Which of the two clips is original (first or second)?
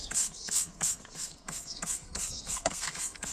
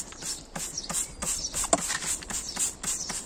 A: second